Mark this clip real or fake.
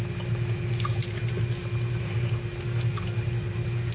real